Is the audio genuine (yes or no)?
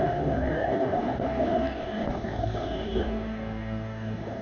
no